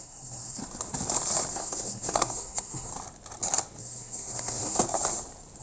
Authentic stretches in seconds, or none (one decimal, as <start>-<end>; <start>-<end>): 0.6-1.5; 2.9-3.8; 4.8-5.6